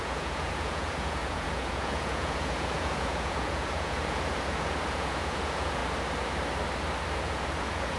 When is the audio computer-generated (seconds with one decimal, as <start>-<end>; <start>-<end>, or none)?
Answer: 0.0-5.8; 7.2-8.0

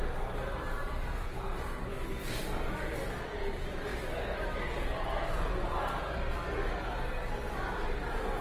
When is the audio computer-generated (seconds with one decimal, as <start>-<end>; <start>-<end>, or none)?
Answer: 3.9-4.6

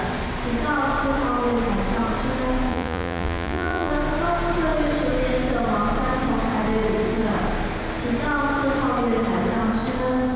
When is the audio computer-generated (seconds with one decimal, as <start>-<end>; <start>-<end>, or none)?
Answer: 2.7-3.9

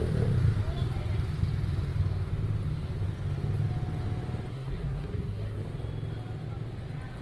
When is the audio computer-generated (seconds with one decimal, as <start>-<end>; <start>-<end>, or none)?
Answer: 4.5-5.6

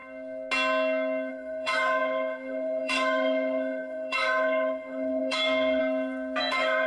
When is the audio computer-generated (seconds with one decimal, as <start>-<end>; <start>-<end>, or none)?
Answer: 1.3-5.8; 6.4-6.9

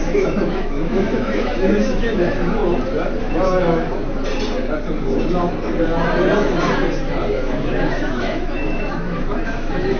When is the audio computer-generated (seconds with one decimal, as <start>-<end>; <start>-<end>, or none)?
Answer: 0.0-2.6; 3.2-4.0; 7.3-10.0

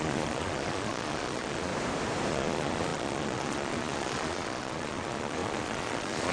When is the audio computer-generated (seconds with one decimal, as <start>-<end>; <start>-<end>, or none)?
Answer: 0.0-1.7; 2.3-6.3

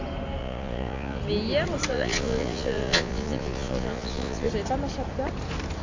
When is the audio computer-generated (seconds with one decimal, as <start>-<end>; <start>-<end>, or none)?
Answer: 0.4-1.2; 1.9-4.5